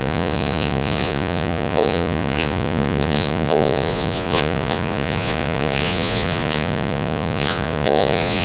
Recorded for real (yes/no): no